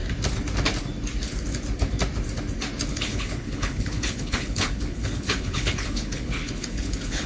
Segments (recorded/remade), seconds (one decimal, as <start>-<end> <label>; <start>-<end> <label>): 0.0-2.9 recorded; 2.9-7.3 remade